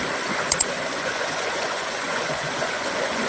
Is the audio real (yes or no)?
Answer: no